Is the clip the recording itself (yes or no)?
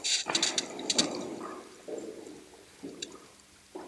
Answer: yes